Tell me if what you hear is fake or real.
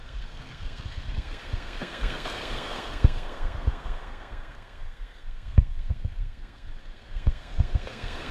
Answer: fake